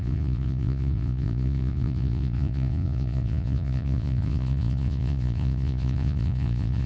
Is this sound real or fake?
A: fake